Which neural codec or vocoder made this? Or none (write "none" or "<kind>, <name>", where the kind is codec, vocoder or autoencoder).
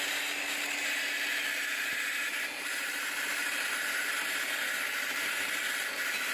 none